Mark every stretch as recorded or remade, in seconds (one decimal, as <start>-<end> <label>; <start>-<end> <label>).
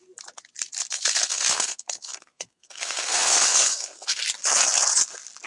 0.0-0.9 recorded; 0.9-4.2 remade; 4.2-5.5 recorded